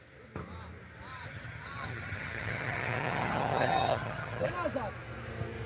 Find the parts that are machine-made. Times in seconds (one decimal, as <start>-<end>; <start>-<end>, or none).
1.1-4.5